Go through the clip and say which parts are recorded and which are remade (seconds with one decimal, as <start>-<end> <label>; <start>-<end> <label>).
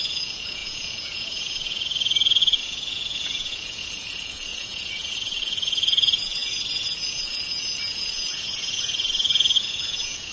0.0-10.3 remade